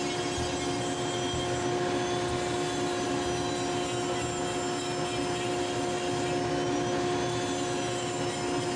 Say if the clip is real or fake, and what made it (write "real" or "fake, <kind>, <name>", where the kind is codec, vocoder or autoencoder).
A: real